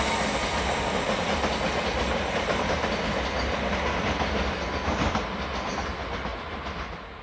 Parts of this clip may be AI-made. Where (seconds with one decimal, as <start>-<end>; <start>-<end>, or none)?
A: none